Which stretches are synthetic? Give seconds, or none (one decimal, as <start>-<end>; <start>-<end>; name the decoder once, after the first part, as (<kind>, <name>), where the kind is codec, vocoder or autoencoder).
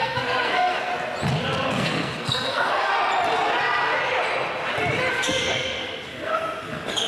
0.0-0.9 (codec, SNAC); 1.7-2.9; 5.1-7.1